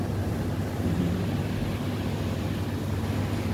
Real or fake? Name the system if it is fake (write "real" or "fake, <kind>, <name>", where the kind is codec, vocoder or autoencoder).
real